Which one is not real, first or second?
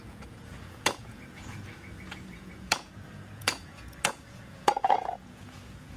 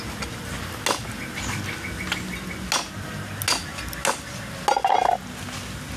first